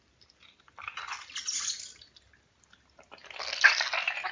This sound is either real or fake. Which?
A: real